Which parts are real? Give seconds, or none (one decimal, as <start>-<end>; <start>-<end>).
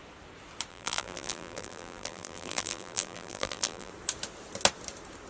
0.0-0.7; 3.9-5.3